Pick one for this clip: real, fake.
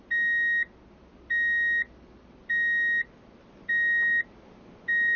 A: real